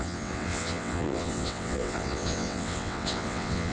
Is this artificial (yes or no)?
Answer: yes